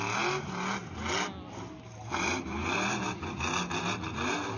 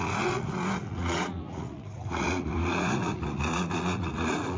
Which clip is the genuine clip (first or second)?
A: first